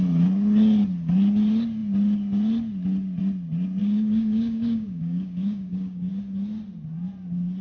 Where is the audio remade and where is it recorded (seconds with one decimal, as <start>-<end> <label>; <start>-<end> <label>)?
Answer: 0.0-3.8 recorded; 3.8-6.1 remade; 6.1-7.6 recorded